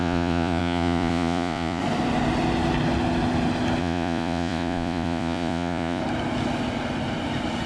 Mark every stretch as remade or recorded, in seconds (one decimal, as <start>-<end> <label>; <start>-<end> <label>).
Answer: 0.0-1.8 remade; 1.8-3.8 recorded; 3.8-6.0 remade; 6.0-7.7 recorded